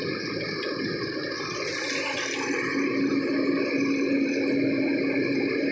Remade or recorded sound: recorded